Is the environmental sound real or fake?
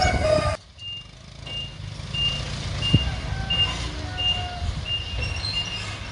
real